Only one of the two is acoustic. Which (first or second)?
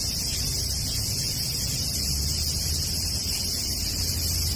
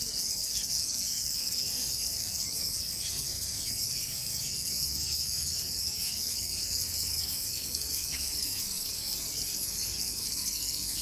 first